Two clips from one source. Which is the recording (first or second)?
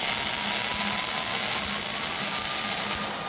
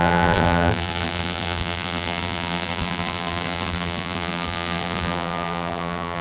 first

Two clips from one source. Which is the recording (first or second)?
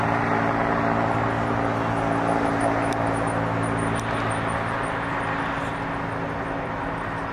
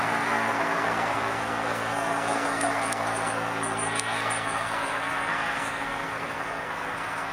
first